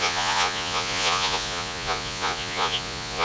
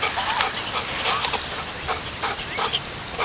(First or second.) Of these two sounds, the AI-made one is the first